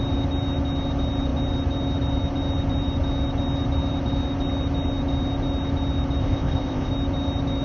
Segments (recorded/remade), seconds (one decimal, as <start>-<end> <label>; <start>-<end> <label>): 0.0-6.2 recorded; 6.2-6.9 remade; 6.9-7.6 recorded